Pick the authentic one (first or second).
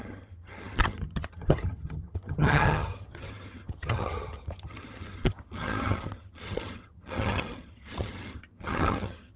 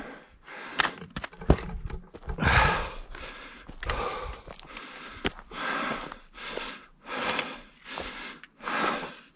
second